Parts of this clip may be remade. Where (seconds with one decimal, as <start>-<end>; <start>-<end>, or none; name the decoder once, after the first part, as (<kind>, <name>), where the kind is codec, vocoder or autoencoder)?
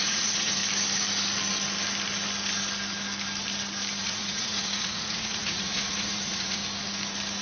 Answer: 0.0-0.6 (vocoder, Vocos); 4.0-6.6